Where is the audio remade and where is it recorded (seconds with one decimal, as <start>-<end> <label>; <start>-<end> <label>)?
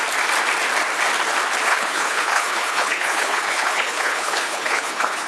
0.0-1.7 recorded; 1.7-5.3 remade